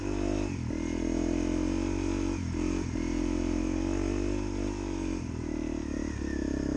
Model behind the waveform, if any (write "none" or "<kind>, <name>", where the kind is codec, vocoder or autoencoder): none